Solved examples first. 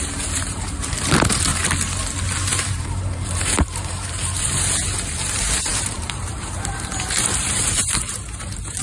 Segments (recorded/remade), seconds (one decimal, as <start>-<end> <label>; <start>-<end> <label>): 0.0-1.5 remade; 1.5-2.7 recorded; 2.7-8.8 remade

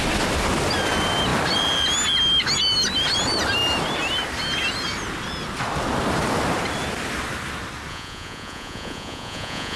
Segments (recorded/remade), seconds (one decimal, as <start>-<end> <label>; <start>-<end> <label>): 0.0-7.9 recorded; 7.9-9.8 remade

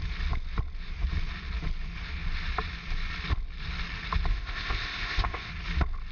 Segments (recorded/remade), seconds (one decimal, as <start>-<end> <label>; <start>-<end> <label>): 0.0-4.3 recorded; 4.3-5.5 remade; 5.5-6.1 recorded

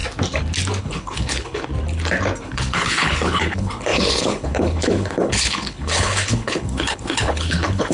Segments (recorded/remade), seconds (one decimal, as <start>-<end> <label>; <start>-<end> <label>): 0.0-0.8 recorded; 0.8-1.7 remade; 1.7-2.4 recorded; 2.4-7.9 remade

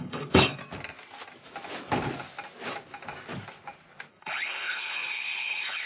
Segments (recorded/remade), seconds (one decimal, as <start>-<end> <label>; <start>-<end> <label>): 0.0-0.6 remade; 0.6-4.1 recorded; 4.1-5.9 remade